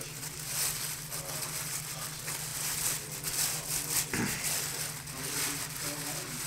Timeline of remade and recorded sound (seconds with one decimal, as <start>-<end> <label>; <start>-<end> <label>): 0.0-6.5 recorded

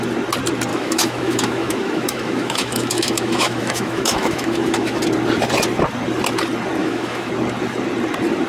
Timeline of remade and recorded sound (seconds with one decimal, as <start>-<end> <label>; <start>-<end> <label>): 0.0-0.7 recorded; 0.7-5.0 remade; 5.0-6.8 recorded; 6.8-7.3 remade; 7.3-8.5 recorded

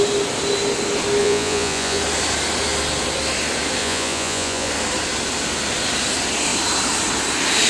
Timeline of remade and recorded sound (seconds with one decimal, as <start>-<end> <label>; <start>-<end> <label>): 0.0-1.2 recorded; 1.2-2.0 remade; 2.0-3.8 recorded; 3.8-4.7 remade; 4.7-7.7 recorded

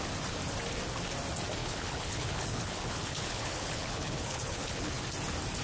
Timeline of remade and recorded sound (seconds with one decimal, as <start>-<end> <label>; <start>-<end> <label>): 0.0-1.6 recorded; 1.6-5.0 remade; 5.0-5.6 recorded

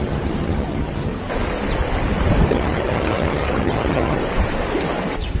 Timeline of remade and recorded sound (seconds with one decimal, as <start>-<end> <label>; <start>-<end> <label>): 0.0-1.1 remade; 1.1-2.5 recorded; 2.5-4.2 remade; 4.2-5.4 recorded

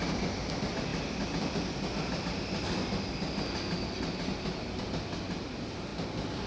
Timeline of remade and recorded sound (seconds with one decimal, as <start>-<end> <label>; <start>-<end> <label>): 0.0-6.5 recorded

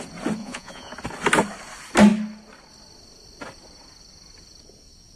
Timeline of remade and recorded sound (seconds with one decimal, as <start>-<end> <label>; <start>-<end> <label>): 0.0-0.4 recorded; 0.4-0.9 remade; 0.9-5.2 recorded

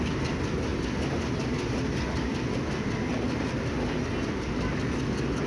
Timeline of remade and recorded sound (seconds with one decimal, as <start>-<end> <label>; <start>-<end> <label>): 0.0-5.5 recorded